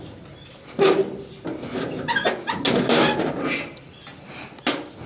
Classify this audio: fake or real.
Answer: real